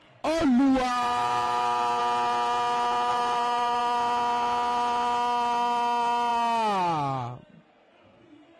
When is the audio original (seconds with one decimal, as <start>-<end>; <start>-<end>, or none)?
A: 0.0-0.9; 2.0-3.1; 3.8-8.6

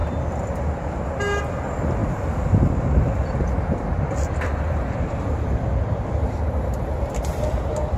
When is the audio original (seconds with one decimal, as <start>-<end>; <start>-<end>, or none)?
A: 0.0-2.0; 6.8-8.0

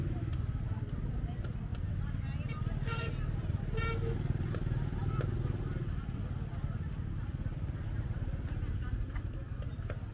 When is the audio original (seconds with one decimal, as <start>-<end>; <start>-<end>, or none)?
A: 0.0-10.1

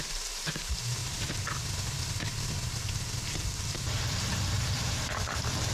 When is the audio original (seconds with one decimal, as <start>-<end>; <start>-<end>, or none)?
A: 1.0-3.4

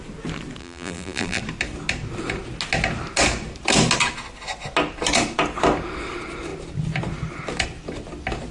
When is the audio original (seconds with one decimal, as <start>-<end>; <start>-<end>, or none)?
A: 0.0-0.6; 1.4-8.5

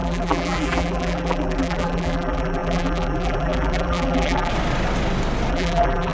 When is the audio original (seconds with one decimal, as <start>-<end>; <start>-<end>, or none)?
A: 4.5-5.5